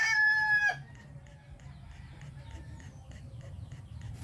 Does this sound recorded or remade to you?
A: remade